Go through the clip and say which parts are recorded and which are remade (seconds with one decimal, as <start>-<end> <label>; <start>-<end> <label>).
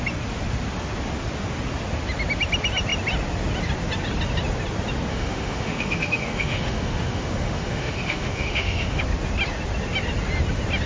0.0-5.1 recorded; 5.1-9.0 remade; 9.0-10.9 recorded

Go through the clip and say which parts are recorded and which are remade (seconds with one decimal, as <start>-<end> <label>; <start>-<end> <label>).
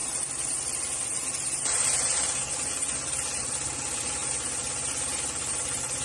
0.0-6.0 recorded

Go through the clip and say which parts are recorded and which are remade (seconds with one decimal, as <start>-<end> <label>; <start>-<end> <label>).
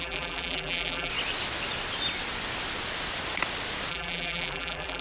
0.0-1.1 remade; 1.1-3.9 recorded; 3.9-5.0 remade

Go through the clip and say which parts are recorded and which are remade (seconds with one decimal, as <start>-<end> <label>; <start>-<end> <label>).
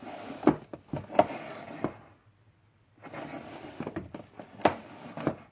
0.0-5.5 recorded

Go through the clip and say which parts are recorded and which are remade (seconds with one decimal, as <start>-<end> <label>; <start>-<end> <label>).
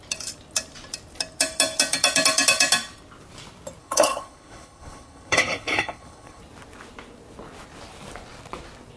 0.0-3.8 recorded; 3.8-6.4 remade; 6.4-9.0 recorded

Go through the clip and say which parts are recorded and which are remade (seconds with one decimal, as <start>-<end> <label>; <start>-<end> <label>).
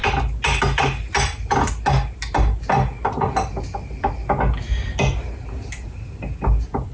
0.0-6.9 recorded